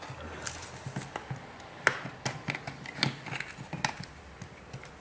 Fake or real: real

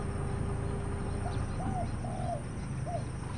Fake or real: real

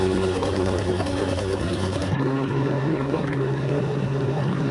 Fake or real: fake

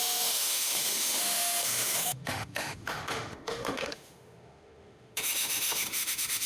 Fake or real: fake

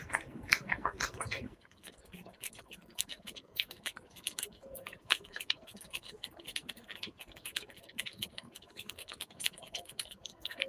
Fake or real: fake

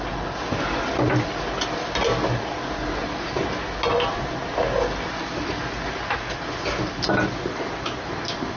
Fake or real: real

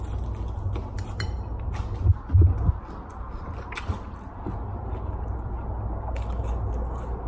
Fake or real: real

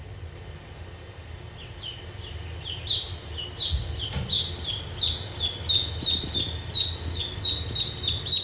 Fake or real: real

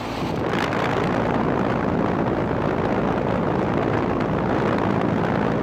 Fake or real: real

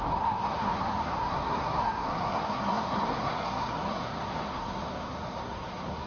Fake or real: fake